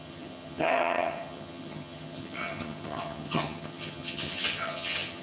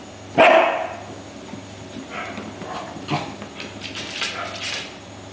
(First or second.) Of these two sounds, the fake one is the first